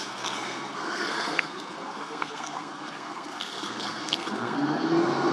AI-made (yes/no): yes